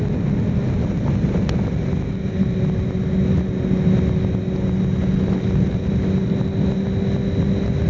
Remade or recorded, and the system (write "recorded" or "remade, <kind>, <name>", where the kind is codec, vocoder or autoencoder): recorded